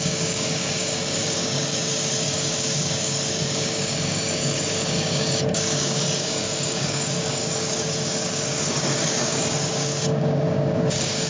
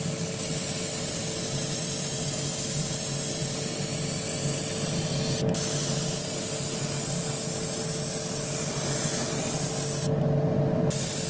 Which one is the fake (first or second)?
first